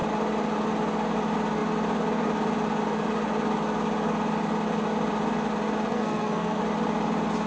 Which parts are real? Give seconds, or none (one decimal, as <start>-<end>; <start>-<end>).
0.0-5.9; 6.6-7.5